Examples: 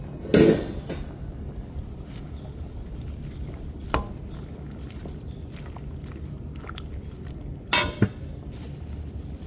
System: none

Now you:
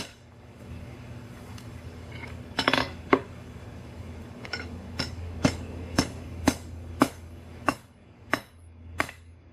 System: codec, DAC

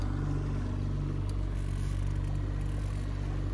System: none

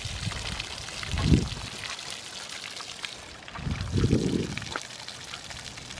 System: none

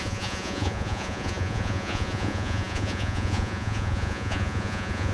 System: vocoder, Vocos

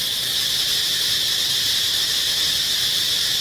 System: none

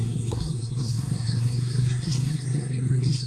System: codec, SNAC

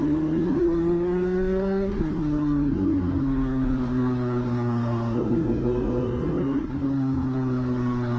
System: codec, SNAC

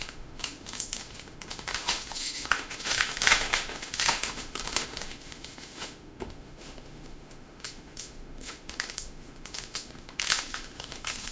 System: autoencoder, DAC-VAE